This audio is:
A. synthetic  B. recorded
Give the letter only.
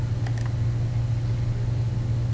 B